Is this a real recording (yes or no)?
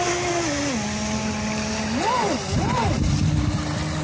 yes